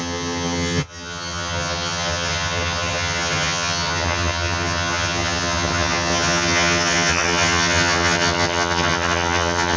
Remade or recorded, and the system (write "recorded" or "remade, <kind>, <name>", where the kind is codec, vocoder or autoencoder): remade, vocoder, HiFi-GAN